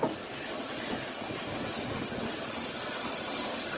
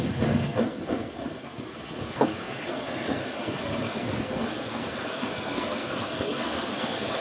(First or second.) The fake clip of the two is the second